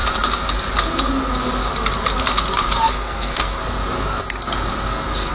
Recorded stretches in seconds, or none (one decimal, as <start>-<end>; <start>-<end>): 0.0-2.9; 3.6-5.3

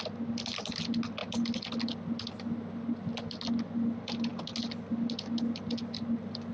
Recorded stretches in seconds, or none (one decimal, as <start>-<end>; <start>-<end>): 0.0-6.5